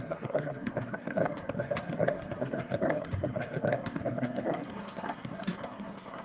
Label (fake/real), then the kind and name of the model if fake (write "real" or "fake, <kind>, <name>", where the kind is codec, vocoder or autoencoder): fake, codec, SNAC